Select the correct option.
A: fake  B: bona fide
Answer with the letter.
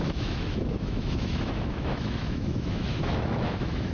A